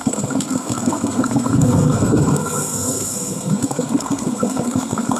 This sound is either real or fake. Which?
fake